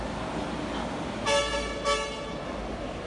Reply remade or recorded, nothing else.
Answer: recorded